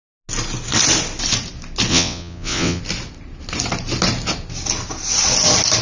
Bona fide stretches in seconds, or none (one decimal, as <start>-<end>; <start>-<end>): 0.0-1.9; 2.8-5.8